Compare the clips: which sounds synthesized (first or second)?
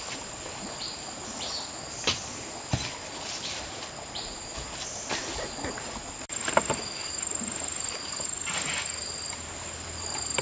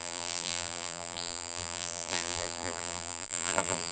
second